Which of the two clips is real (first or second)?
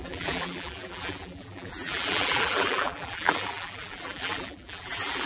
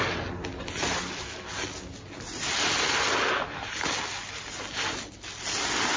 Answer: second